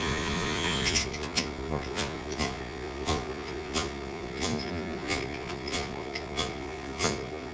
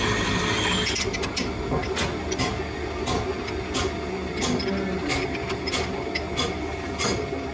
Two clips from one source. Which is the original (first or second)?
second